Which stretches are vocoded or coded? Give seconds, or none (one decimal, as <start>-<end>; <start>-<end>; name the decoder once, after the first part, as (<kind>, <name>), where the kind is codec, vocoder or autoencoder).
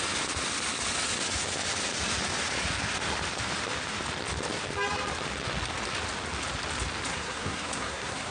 7.1-8.3 (codec, SNAC)